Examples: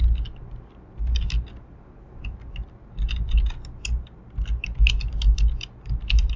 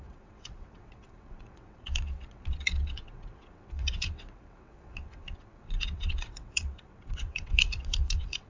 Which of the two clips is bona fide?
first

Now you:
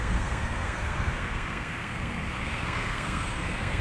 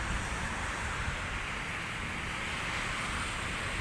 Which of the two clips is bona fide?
second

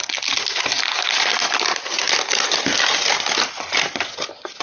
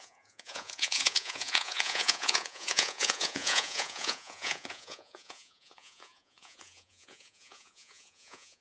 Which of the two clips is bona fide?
first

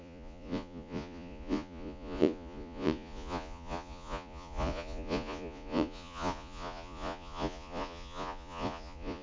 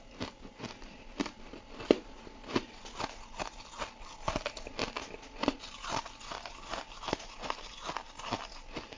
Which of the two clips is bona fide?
second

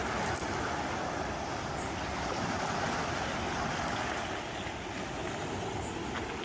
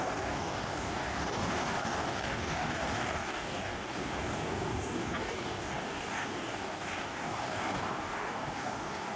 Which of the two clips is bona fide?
first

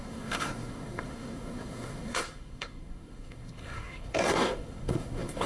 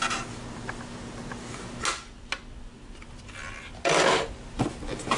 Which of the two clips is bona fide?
second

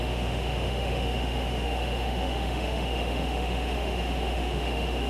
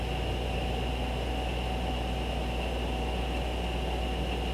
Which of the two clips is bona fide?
second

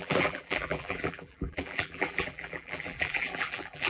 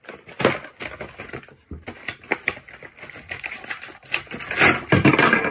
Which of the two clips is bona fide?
second